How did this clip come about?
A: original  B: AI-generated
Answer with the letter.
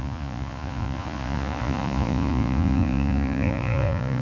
B